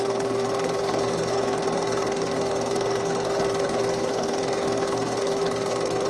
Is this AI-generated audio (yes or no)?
yes